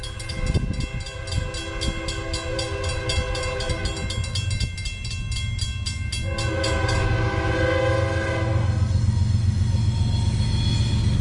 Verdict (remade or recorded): recorded